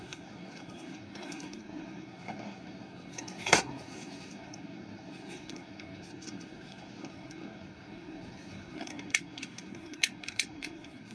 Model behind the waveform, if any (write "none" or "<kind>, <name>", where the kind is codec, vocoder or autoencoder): codec, SNAC